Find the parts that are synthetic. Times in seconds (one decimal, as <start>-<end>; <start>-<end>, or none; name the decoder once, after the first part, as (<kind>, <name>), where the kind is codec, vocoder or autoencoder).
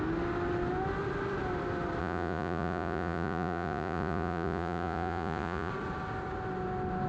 2.0-5.7 (vocoder, Vocos)